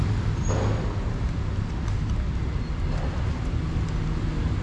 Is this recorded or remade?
recorded